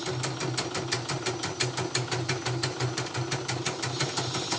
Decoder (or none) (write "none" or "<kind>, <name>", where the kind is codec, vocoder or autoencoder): none